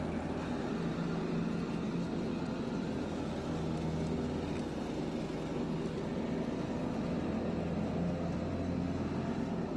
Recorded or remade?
recorded